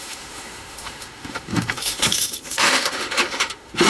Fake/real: fake